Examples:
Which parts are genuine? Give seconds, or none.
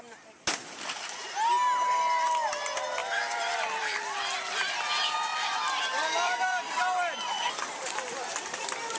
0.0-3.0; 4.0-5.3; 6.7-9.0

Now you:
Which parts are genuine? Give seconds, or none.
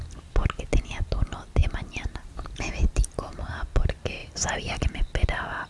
0.0-1.6; 3.4-4.2; 4.8-5.7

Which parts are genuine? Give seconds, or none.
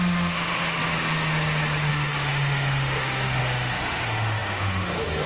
0.8-1.9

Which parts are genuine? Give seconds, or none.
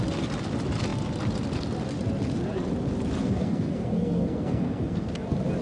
0.0-3.2; 5.1-5.6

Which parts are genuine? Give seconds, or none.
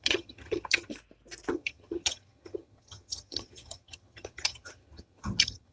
0.9-1.5